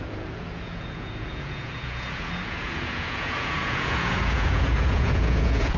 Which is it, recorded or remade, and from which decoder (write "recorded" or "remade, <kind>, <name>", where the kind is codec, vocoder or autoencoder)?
remade, vocoder, Vocos